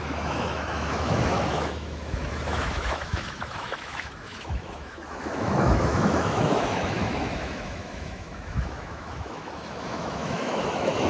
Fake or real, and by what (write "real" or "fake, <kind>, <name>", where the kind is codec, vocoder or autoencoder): fake, autoencoder, DAC-VAE